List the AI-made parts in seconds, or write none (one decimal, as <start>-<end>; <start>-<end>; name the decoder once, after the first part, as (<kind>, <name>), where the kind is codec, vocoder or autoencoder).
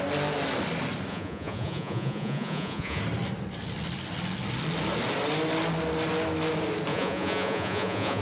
1.1-3.0 (vocoder, Vocos); 6.9-8.2